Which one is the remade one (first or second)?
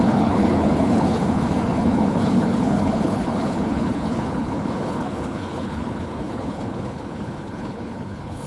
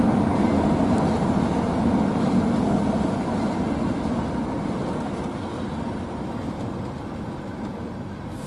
first